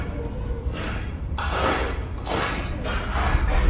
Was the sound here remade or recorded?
recorded